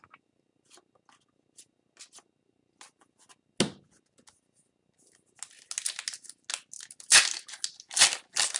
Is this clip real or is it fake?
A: real